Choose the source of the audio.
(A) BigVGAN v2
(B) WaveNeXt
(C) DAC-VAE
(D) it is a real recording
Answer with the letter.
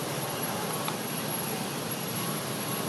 A